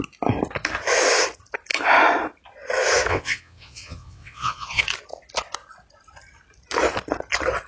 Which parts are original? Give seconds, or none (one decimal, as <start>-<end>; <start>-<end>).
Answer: 0.0-3.1; 4.8-7.7